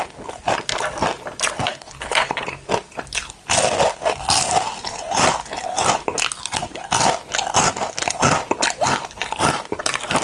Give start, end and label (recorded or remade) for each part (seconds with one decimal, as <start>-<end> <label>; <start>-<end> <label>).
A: 0.0-1.7 recorded; 1.7-2.5 remade; 2.5-10.2 recorded